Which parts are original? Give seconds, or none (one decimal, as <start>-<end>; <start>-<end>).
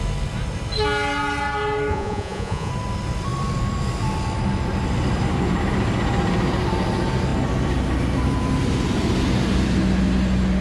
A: 0.0-1.9; 2.7-10.6